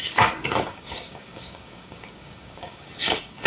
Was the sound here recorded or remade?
remade